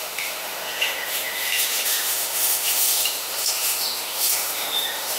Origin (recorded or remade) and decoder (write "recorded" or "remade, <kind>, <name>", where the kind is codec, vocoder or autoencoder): remade, autoencoder, DAC-VAE